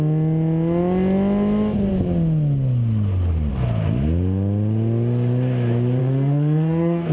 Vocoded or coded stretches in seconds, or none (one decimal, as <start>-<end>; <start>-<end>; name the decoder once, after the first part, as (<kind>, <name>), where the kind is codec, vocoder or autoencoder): 6.0-7.1 (codec, SNAC)